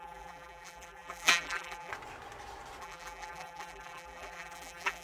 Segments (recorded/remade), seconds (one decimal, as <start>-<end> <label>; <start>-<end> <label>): 0.0-1.9 remade; 1.9-2.8 recorded; 2.8-5.0 remade